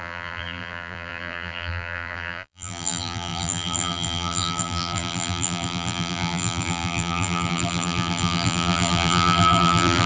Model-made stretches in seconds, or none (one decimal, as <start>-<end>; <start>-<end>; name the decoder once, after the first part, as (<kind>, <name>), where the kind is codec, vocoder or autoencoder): 0.0-10.1 (vocoder, BigVGAN v2)